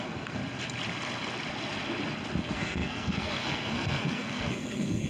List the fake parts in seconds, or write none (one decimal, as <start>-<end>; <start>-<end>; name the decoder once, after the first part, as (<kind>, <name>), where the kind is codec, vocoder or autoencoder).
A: 0.0-0.4 (codec, SNAC); 2.4-5.1